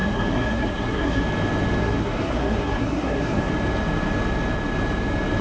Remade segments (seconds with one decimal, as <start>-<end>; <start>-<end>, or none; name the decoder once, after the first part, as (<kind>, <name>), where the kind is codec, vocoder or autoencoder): 0.0-1.2 (codec, SNAC); 1.8-3.5